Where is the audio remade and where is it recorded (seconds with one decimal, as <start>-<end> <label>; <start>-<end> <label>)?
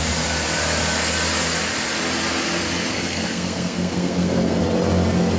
0.0-2.9 recorded; 2.9-4.6 remade; 4.6-5.4 recorded